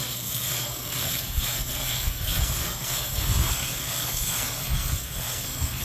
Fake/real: fake